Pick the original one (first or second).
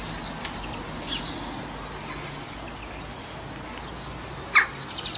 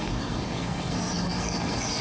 first